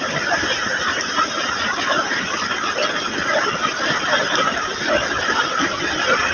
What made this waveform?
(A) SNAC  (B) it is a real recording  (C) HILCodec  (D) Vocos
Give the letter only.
B